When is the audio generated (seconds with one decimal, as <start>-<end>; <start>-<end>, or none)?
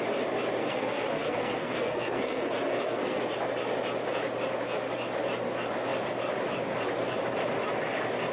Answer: 0.6-3.2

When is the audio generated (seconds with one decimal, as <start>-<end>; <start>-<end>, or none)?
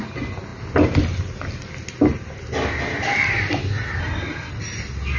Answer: 4.0-4.5